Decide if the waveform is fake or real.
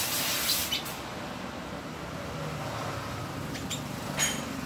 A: real